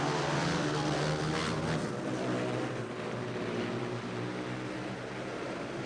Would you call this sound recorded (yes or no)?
yes